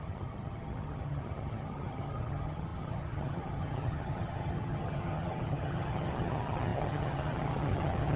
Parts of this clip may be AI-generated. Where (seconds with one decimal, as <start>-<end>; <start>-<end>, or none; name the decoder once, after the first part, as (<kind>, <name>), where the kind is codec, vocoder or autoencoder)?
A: 0.0-8.2 (vocoder, HiFi-GAN)